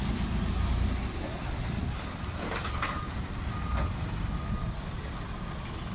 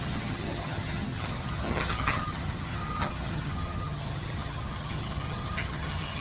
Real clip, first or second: first